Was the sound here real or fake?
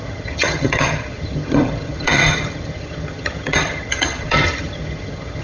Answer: fake